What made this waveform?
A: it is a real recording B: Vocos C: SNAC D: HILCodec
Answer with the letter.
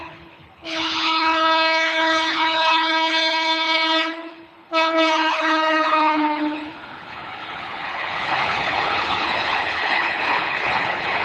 D